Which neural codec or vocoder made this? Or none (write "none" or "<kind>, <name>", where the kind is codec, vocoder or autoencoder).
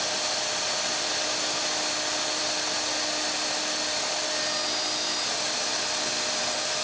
none